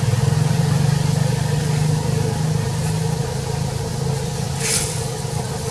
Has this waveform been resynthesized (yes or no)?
no